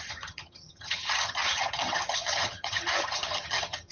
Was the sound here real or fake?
fake